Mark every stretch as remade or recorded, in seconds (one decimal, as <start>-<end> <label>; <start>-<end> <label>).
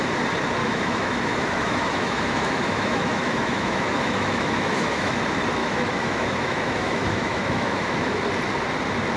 0.0-0.6 recorded; 0.6-5.1 remade; 5.1-5.6 recorded; 5.6-8.2 remade; 8.2-9.2 recorded